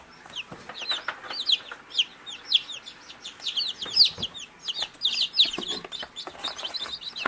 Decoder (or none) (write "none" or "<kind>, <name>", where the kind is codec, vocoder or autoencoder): none